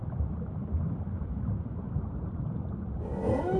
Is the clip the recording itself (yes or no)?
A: yes